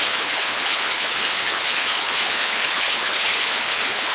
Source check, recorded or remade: remade